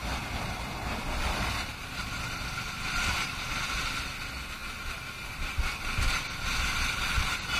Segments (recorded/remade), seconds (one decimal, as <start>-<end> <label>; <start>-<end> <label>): 0.0-7.6 recorded